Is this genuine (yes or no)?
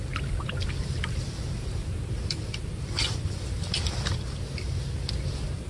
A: yes